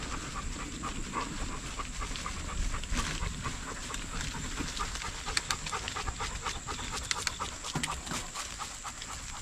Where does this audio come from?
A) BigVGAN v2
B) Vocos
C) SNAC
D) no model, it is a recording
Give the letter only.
D